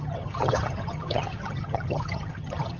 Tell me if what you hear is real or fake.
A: fake